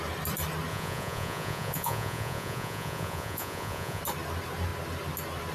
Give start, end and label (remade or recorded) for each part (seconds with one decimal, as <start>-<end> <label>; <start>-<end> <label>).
0.0-0.7 recorded; 0.7-4.0 remade; 4.0-5.5 recorded

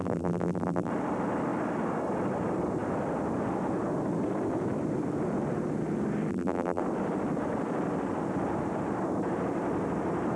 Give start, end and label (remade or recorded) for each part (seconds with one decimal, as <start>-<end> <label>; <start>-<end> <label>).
0.0-0.9 remade; 0.9-6.3 recorded; 6.3-6.8 remade; 6.8-10.4 recorded

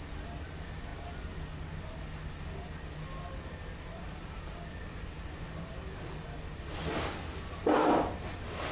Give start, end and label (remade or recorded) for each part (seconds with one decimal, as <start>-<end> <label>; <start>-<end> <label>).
0.0-8.7 recorded